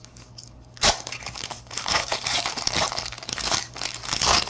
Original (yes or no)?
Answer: no